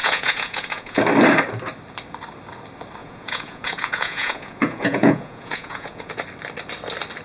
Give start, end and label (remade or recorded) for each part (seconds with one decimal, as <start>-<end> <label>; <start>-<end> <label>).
0.0-1.0 remade; 1.0-3.0 recorded; 3.0-6.1 remade; 6.1-7.2 recorded